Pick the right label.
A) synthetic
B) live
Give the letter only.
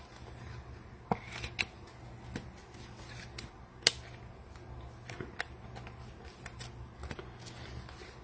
B